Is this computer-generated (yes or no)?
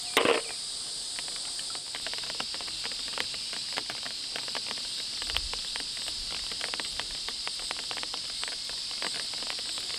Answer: no